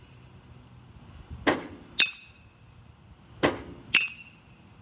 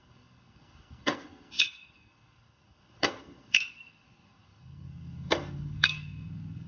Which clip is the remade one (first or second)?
second